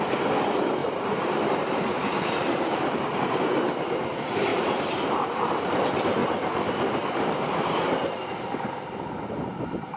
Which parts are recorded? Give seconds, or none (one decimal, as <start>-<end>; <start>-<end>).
0.0-0.8; 3.2-4.5; 5.1-6.2; 8.1-10.0